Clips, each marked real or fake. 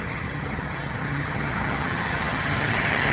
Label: fake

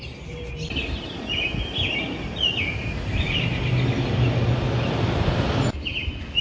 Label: real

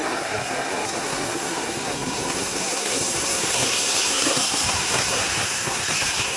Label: fake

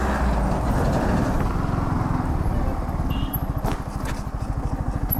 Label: real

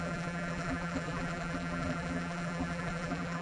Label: fake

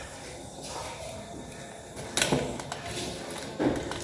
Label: real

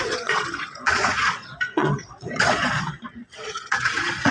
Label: fake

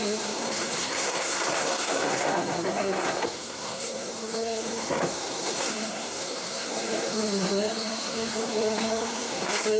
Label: fake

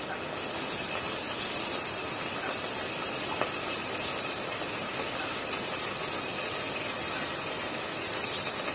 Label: real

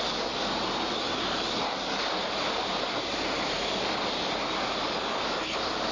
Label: fake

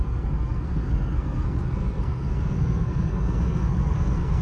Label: fake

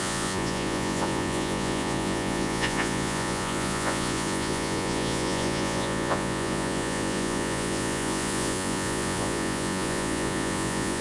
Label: fake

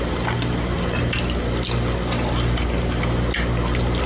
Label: real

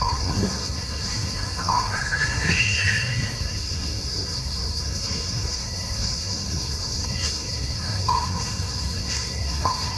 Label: fake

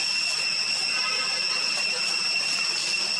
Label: real